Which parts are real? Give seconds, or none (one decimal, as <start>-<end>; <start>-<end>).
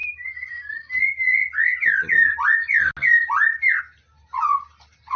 0.7-4.5